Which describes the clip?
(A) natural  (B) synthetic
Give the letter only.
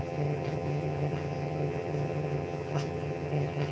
B